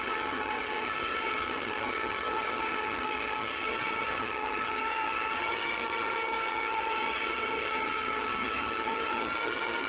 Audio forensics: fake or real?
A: fake